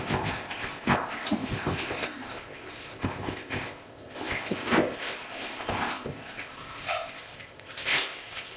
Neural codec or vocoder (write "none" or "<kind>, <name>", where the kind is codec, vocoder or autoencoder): codec, ZipCodec